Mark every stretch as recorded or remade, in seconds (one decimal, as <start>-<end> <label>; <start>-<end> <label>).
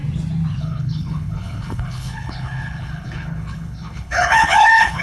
0.0-0.6 recorded; 0.6-5.0 remade